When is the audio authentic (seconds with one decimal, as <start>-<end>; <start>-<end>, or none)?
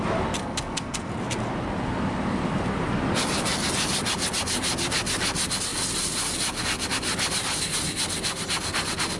0.0-0.4; 1.1-9.2